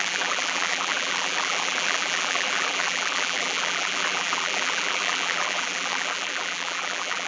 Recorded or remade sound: remade